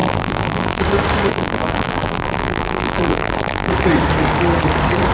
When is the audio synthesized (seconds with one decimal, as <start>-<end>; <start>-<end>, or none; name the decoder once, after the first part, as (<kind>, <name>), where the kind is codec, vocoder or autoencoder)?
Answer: 0.0-0.8 (vocoder, BigVGAN v2); 1.3-3.7